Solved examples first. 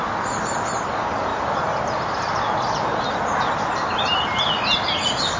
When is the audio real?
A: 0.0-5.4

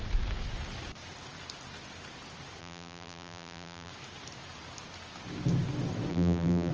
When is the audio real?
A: 0.0-2.6; 3.9-6.1